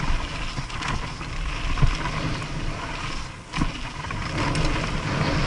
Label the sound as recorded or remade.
recorded